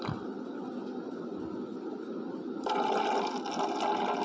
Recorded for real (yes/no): yes